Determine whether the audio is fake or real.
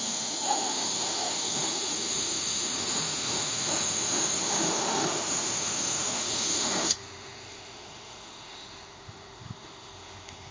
fake